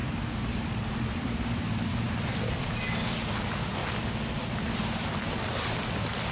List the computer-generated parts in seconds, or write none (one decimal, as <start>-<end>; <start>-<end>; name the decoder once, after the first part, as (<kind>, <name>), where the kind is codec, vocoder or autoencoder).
1.2-3.8 (vocoder, BigVGAN v2); 5.3-6.3